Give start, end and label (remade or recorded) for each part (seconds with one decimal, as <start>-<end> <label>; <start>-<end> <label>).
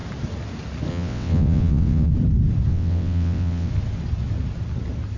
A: 0.0-0.9 recorded; 0.9-2.1 remade; 2.1-2.7 recorded; 2.7-3.7 remade; 3.7-5.2 recorded